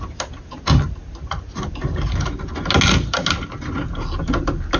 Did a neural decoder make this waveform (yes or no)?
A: no